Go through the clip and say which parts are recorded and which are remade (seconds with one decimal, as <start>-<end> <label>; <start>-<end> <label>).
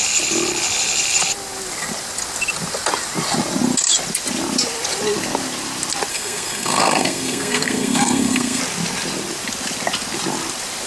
0.0-6.1 recorded; 6.1-8.6 remade; 8.6-10.9 recorded